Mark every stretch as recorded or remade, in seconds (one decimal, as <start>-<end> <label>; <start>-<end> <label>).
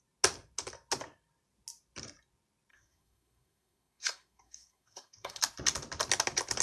0.0-2.7 recorded; 2.7-5.4 remade; 5.4-6.6 recorded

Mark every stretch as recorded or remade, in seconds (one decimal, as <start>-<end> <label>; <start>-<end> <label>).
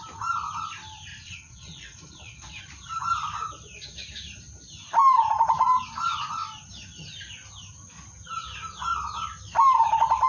0.0-1.1 recorded; 1.1-2.6 remade; 2.6-10.3 recorded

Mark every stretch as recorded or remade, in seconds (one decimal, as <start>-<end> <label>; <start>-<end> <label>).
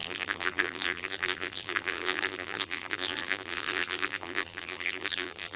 0.0-5.6 remade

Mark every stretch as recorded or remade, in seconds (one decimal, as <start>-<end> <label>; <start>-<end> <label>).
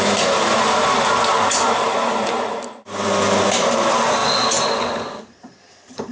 0.0-4.2 remade; 4.2-5.2 recorded; 5.2-6.1 remade